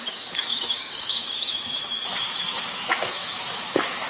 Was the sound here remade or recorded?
remade